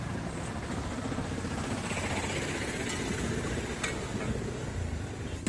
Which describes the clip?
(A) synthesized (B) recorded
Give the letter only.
B